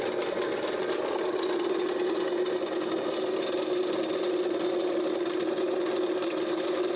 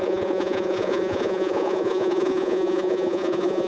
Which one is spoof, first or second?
second